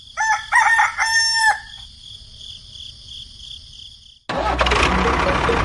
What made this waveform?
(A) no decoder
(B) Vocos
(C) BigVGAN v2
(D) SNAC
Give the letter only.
A